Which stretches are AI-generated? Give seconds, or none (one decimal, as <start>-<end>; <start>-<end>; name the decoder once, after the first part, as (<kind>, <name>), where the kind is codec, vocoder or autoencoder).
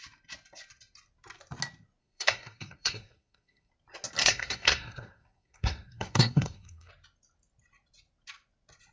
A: 2.0-3.7 (codec, SNAC); 4.2-6.9